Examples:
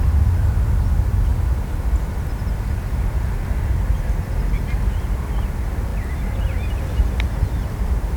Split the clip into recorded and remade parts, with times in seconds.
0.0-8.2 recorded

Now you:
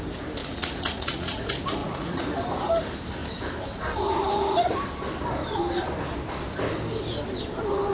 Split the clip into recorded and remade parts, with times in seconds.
0.0-0.4 recorded; 0.4-1.4 remade; 1.4-1.8 recorded; 1.8-2.3 remade; 2.3-7.9 recorded

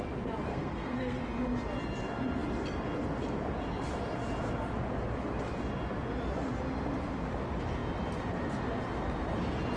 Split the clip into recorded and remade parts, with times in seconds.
0.0-0.5 recorded; 0.5-1.2 remade; 1.2-9.8 recorded

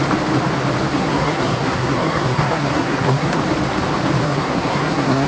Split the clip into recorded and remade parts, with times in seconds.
0.0-0.9 recorded; 0.9-3.4 remade; 3.4-4.2 recorded; 4.2-5.3 remade

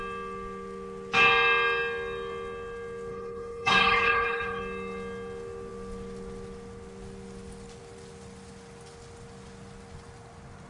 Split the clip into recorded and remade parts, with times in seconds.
0.0-3.1 recorded; 3.1-4.6 remade; 4.6-10.7 recorded